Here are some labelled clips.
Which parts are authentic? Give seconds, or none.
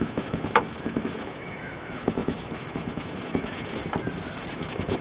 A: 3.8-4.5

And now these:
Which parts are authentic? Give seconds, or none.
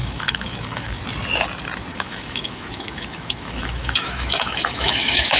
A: 1.0-1.9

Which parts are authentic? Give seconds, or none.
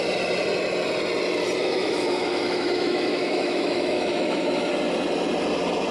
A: 0.0-1.6; 4.7-5.9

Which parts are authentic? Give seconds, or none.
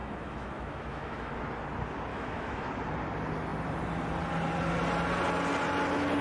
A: 1.3-2.1; 2.7-6.2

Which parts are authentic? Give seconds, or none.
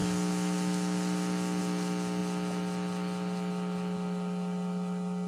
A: 0.0-5.3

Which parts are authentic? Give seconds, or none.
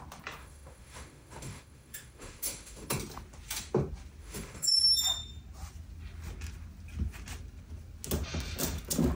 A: 0.0-0.4; 3.0-4.2; 4.8-9.1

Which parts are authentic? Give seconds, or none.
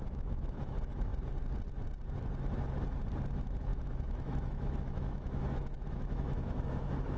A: 1.1-3.2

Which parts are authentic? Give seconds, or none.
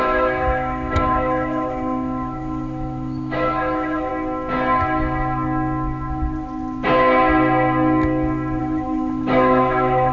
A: 4.1-8.6